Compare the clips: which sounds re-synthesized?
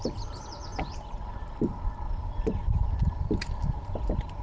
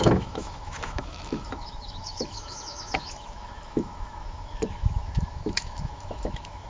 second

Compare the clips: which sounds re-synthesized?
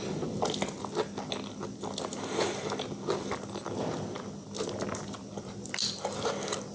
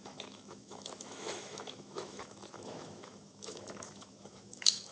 second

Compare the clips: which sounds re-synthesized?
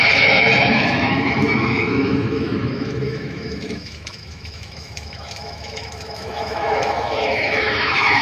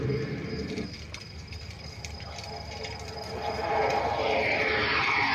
first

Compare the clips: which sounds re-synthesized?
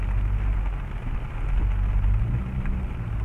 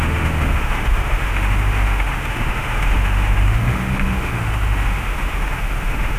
second